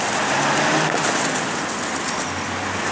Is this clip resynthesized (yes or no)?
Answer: no